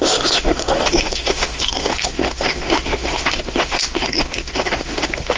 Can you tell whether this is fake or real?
fake